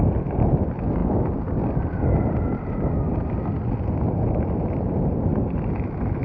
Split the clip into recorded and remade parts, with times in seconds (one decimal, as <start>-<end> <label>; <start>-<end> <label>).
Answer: 0.0-6.2 recorded